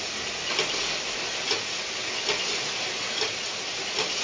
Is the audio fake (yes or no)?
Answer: no